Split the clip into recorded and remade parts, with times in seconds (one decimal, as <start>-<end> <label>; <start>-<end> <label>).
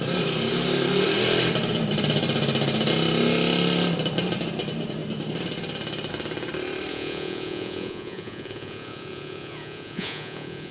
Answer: 0.0-6.9 recorded; 6.9-10.7 remade